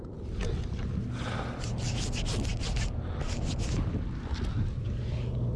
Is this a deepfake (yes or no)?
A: no